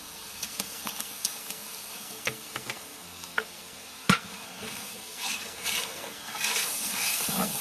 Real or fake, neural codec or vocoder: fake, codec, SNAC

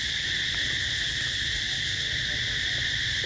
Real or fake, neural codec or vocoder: real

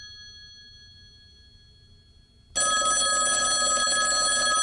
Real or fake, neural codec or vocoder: real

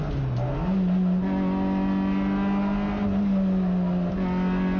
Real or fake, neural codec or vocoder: real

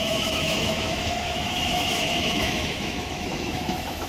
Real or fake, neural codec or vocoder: fake, autoencoder, DAC-VAE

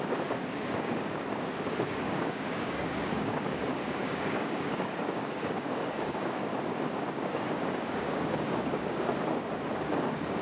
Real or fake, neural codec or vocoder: fake, codec, DAC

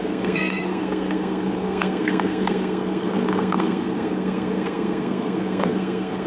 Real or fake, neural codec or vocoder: fake, codec, SNAC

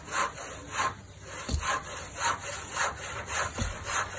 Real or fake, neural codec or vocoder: real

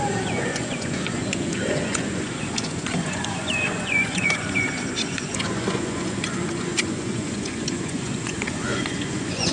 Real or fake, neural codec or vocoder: fake, vocoder, Vocos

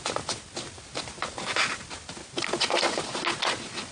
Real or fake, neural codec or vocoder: real